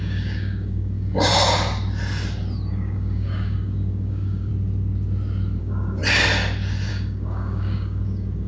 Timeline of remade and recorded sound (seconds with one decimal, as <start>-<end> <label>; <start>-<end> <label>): 0.0-1.3 remade; 1.3-2.7 recorded; 2.7-4.5 remade; 4.5-5.6 recorded; 5.6-6.0 remade; 6.0-6.9 recorded; 6.9-8.5 remade